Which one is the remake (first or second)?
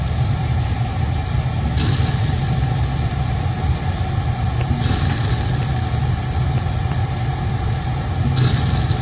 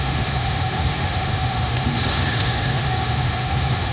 second